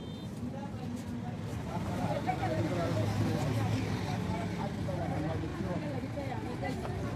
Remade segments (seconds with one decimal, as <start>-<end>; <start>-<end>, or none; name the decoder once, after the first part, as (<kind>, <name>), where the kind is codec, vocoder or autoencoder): 1.5-2.6 (vocoder, BigVGAN v2); 5.5-6.0